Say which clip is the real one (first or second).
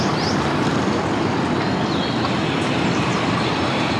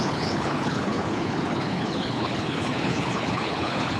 first